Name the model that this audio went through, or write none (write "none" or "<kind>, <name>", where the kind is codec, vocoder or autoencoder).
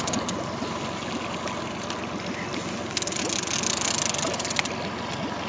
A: none